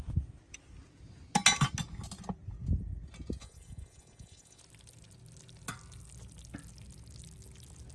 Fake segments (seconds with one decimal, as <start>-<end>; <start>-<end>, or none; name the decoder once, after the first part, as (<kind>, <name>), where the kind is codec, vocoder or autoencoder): 3.4-4.6 (vocoder, Vocos)